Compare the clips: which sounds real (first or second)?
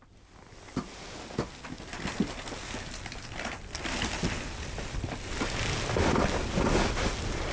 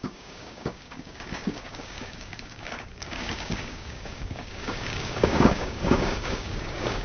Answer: first